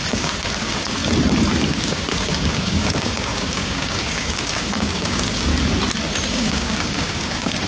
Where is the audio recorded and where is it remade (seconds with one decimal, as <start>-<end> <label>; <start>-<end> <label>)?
0.0-1.0 remade; 1.0-1.7 recorded; 1.7-5.5 remade; 5.5-6.3 recorded; 6.3-7.7 remade